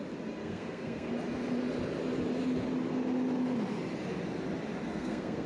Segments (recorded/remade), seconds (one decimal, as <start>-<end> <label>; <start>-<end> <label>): 0.0-0.4 recorded; 0.4-1.1 remade; 1.1-4.9 recorded; 4.9-5.5 remade